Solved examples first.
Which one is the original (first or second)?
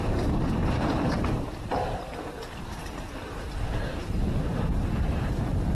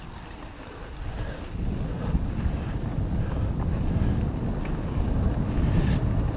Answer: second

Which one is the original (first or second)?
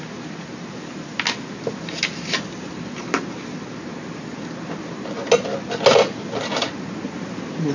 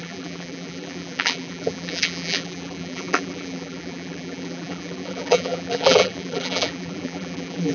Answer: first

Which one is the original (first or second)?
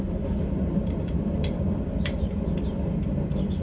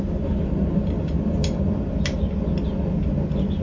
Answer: second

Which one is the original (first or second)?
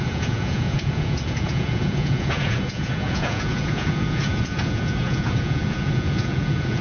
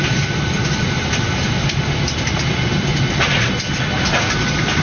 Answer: second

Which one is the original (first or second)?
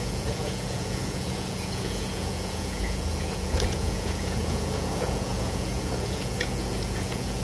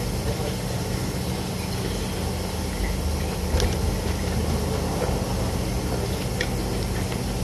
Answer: second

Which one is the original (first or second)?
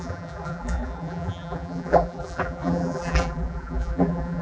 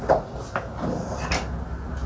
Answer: second